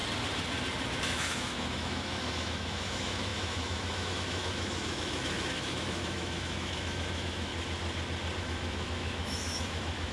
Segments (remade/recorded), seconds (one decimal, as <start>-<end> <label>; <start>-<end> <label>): 0.0-1.0 recorded; 1.0-7.5 remade; 7.5-8.4 recorded; 8.4-10.1 remade